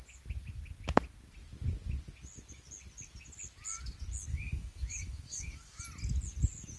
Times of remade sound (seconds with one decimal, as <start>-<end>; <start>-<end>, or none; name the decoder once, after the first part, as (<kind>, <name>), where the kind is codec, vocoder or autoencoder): 4.3-5.8 (autoencoder, DAC-VAE)